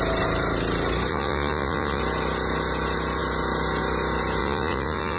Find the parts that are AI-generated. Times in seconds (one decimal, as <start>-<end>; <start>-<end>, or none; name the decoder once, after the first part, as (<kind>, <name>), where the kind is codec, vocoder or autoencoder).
1.1-2.0 (vocoder, Vocos); 4.4-5.2